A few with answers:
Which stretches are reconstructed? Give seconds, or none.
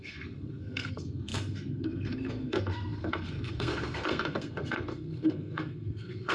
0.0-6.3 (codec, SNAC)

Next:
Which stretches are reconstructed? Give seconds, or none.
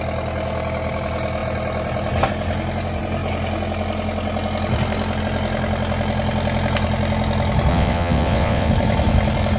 7.7-8.7 (vocoder, WaveNeXt)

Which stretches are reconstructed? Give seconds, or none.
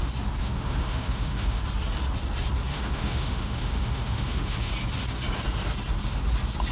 0.4-1.6 (autoencoder, DAC-VAE); 2.7-4.7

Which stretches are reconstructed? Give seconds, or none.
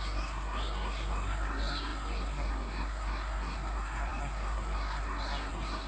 0.0-5.9 (codec, SNAC)